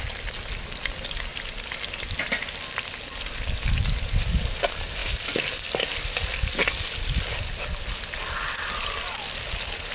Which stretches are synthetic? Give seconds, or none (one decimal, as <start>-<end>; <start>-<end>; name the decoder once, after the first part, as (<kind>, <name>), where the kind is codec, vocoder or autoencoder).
none